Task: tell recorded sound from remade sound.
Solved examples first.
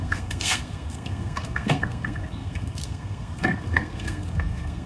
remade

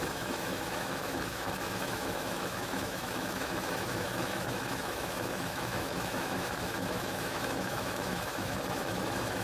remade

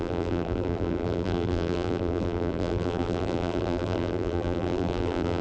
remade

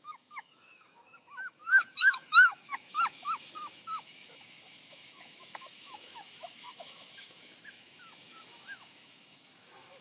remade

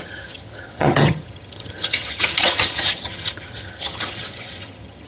remade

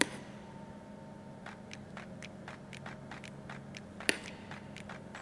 recorded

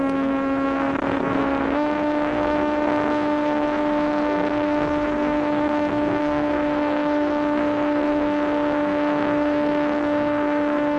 remade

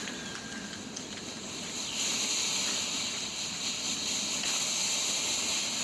recorded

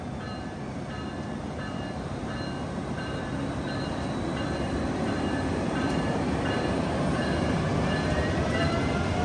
remade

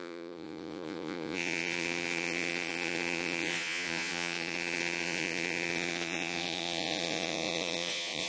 remade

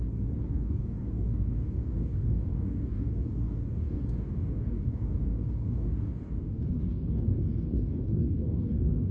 remade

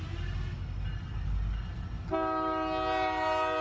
recorded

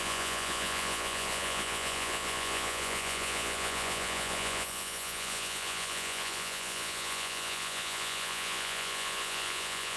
remade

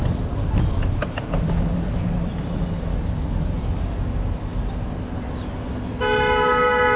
recorded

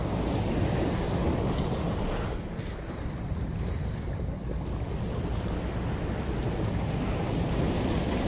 recorded